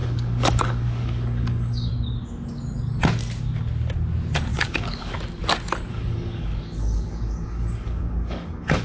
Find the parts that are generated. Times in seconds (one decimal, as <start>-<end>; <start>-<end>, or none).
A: 0.0-1.9; 4.5-5.1; 5.9-8.8